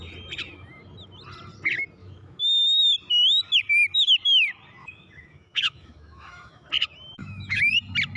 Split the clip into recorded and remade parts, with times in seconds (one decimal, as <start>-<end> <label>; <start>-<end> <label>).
0.0-2.0 recorded; 2.0-2.8 remade; 2.8-4.8 recorded; 4.8-6.7 remade; 6.7-7.2 recorded; 7.2-7.7 remade; 7.7-8.2 recorded